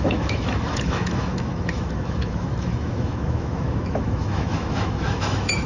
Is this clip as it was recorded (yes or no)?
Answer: no